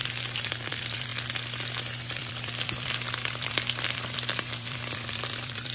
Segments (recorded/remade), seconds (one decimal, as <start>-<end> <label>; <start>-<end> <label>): 0.0-1.1 remade; 1.1-2.0 recorded; 2.0-5.7 remade